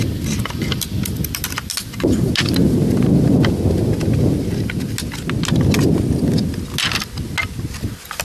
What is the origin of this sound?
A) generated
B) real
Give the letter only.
B